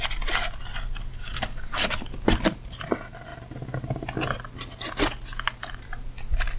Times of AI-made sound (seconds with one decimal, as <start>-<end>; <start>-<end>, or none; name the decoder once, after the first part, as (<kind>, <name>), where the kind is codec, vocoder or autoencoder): 1.1-1.9 (codec, DAC)